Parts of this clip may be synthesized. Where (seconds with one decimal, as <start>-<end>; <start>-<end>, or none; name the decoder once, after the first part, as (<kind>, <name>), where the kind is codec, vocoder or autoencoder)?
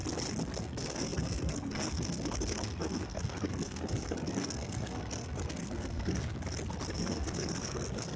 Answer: 0.6-6.2 (codec, SNAC); 6.9-8.2